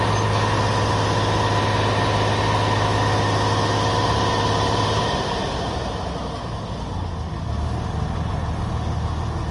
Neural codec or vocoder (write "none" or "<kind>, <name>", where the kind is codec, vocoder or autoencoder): none